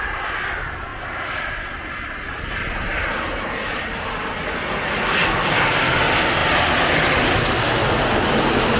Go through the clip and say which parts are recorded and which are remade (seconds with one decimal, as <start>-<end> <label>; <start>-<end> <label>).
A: 0.0-8.8 recorded